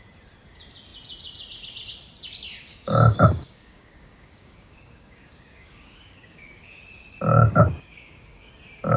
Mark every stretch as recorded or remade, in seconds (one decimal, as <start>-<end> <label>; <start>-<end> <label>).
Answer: 0.0-2.7 recorded; 2.7-6.8 remade; 6.8-7.3 recorded; 7.3-8.5 remade; 8.5-9.0 recorded